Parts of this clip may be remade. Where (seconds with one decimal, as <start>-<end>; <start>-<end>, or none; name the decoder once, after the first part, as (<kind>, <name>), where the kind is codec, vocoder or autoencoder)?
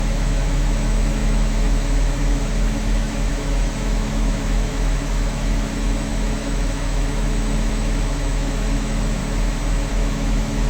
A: 0.0-9.2 (autoencoder, DAC-VAE); 9.9-10.7